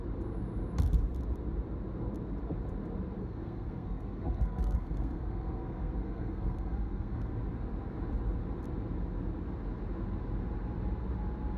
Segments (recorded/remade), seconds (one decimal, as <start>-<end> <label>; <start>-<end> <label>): 0.0-3.2 recorded; 3.2-7.3 remade; 7.3-11.6 recorded